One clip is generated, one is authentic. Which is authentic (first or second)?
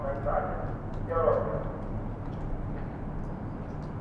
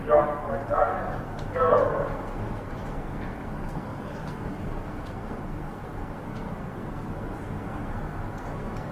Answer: first